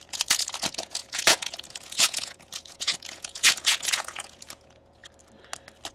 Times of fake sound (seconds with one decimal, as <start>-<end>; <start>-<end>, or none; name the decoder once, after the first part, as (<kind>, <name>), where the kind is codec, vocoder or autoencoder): 0.0-5.0 (vocoder, Vocos)